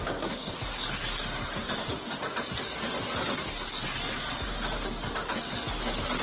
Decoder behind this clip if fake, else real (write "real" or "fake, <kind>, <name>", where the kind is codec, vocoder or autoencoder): real